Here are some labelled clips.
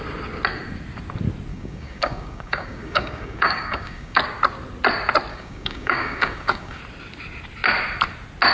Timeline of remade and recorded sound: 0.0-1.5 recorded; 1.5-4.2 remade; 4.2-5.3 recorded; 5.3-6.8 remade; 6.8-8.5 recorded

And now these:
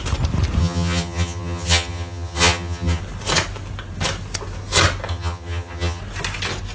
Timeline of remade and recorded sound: 0.0-0.6 recorded; 0.6-3.0 remade; 3.0-5.1 recorded; 5.1-6.0 remade; 6.0-6.7 recorded

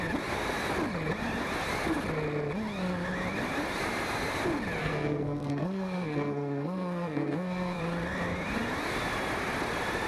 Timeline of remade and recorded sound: 0.0-4.8 recorded; 4.8-7.8 remade; 7.8-10.1 recorded

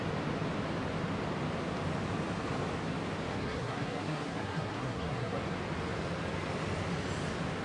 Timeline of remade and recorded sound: 0.0-3.3 recorded; 3.3-5.4 remade; 5.4-7.6 recorded

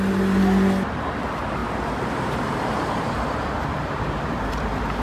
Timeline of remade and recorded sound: 0.0-1.6 recorded; 1.6-4.5 remade; 4.5-5.0 recorded

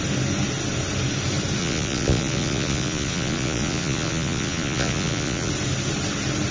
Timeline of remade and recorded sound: 0.0-1.6 recorded; 1.6-5.5 remade; 5.5-6.5 recorded

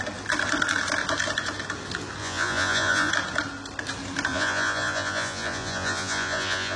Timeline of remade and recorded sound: 0.0-2.2 recorded; 2.2-3.1 remade; 3.1-4.3 recorded; 4.3-6.8 remade